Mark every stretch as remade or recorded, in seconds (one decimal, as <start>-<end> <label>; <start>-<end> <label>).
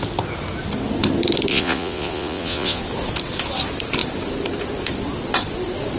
0.0-1.5 recorded; 1.5-2.8 remade; 2.8-6.0 recorded